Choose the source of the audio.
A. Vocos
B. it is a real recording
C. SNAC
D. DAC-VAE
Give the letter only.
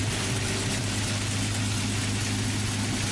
B